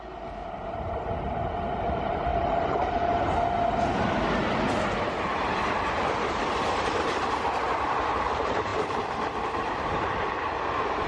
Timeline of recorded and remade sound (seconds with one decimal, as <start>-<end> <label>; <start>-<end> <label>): 0.0-2.3 remade; 2.3-5.1 recorded; 5.1-11.1 remade